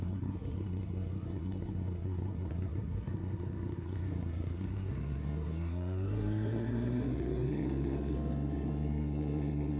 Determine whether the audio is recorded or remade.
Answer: remade